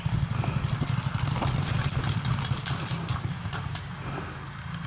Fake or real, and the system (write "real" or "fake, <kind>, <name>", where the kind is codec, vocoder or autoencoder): real